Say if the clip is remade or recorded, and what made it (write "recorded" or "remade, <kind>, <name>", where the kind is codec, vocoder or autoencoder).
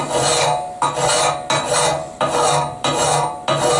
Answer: recorded